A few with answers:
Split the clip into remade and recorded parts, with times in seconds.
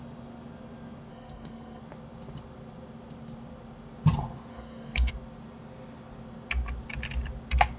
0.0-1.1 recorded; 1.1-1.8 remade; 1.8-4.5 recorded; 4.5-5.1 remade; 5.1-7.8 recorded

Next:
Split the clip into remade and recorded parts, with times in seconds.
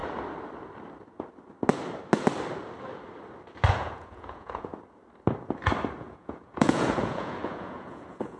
0.0-3.7 recorded; 3.7-4.7 remade; 4.7-5.9 recorded; 5.9-8.4 remade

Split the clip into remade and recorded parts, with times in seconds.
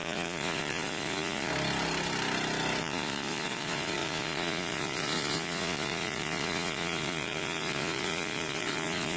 0.0-1.5 remade; 1.5-2.8 recorded; 2.8-9.2 remade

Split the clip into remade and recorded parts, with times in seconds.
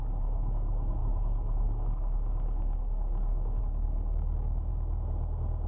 0.0-4.7 remade; 4.7-5.7 recorded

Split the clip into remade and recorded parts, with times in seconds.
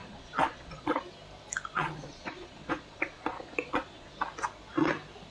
0.0-1.0 remade; 1.0-1.8 recorded; 1.8-4.2 remade; 4.2-5.3 recorded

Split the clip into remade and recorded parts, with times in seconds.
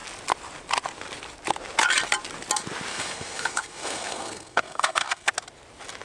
0.0-2.9 recorded; 2.9-5.3 remade; 5.3-6.0 recorded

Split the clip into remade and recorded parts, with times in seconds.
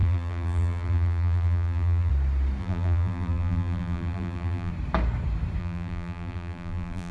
0.0-2.1 remade; 2.1-2.6 recorded; 2.6-4.7 remade; 4.7-5.6 recorded; 5.6-7.1 remade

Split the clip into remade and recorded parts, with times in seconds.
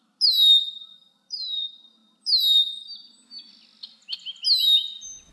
0.0-5.3 recorded